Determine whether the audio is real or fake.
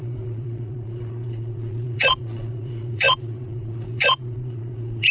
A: fake